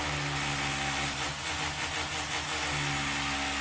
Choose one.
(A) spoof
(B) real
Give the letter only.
B